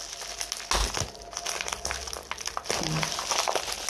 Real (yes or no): yes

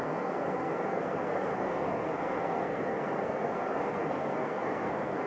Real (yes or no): no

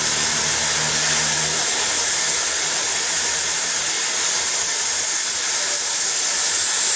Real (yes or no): yes